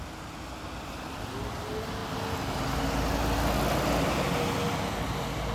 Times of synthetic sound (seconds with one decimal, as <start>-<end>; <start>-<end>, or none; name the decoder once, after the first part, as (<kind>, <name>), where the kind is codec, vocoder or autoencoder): none